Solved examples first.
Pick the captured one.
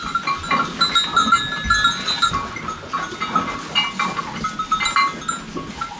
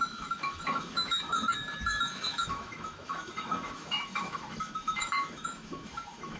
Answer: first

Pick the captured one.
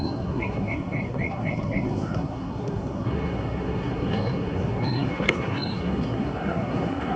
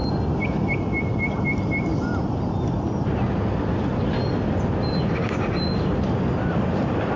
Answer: second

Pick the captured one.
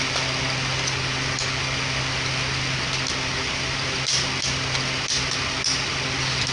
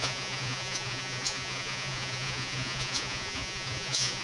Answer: first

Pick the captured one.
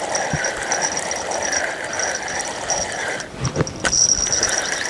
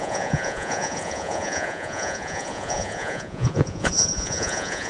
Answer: first